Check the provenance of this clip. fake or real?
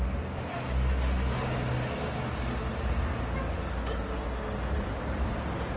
real